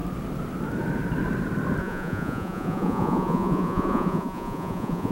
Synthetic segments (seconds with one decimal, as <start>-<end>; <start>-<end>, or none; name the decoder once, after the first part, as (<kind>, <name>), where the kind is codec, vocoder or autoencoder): 1.8-5.1 (vocoder, Vocos)